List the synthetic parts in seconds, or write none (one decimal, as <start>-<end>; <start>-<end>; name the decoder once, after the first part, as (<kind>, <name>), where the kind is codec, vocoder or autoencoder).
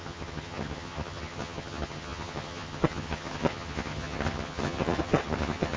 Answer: 0.0-5.8 (vocoder, HiFi-GAN)